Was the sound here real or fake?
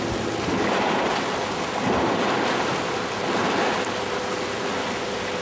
real